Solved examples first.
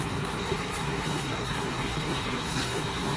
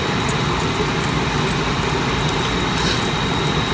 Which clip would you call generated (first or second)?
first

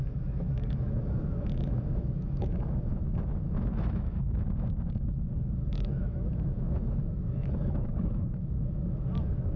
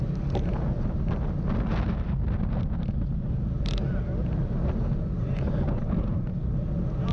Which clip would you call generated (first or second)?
first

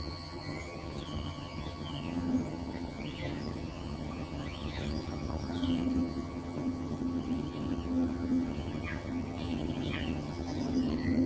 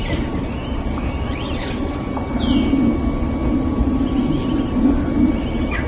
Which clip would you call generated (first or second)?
first